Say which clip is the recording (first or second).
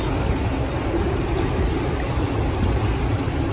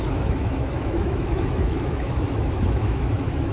first